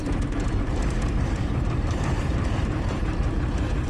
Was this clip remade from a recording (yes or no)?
yes